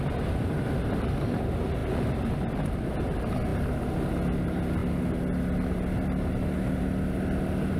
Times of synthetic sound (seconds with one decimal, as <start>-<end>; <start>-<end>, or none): none

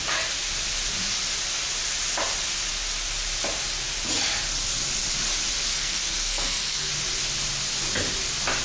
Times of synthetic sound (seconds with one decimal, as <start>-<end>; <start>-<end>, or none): 5.7-6.9

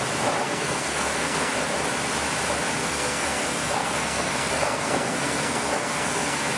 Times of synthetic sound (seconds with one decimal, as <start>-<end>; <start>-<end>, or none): 0.4-1.5; 2.8-6.6

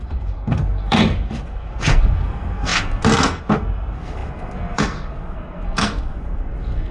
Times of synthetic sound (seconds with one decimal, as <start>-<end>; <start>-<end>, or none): 0.0-6.9

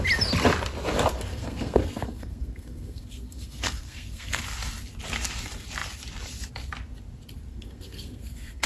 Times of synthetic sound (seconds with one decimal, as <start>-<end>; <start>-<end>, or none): 1.3-4.4; 7.5-8.7

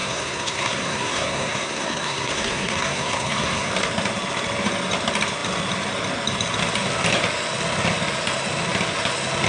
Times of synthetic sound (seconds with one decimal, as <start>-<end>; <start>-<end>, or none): 0.0-3.7